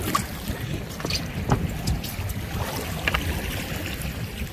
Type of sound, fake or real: real